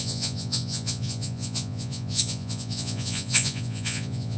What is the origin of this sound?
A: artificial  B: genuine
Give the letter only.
A